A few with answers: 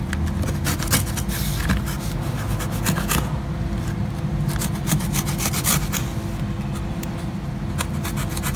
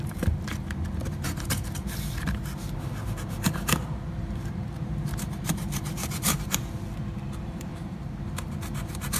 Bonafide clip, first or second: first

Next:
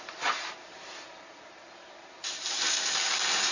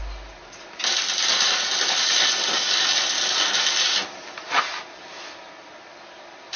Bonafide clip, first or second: second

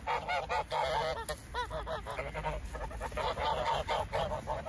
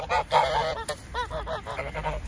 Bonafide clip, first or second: first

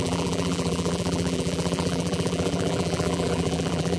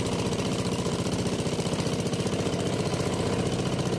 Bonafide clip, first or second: second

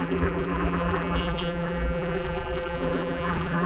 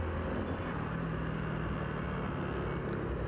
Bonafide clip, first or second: second